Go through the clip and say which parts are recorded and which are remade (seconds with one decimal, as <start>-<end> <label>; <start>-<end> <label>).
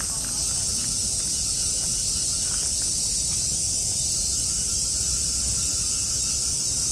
0.0-6.9 recorded